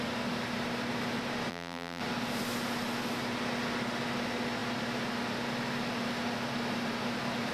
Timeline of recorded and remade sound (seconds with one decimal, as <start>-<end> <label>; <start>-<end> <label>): 0.0-1.5 recorded; 1.5-2.0 remade; 2.0-7.5 recorded